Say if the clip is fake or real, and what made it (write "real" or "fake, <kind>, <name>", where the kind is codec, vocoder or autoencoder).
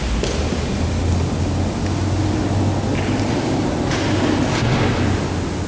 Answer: real